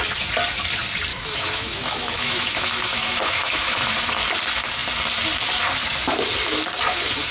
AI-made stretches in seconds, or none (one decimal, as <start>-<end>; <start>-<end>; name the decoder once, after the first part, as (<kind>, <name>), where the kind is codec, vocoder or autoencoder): 1.1-3.9 (autoencoder, DAC-VAE)